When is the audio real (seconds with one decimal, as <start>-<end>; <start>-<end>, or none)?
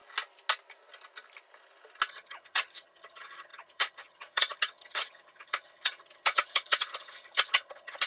0.0-2.1